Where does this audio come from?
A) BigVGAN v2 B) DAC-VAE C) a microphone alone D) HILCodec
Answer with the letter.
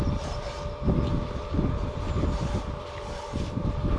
A